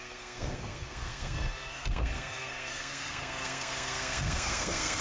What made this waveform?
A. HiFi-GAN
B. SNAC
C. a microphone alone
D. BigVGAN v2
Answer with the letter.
B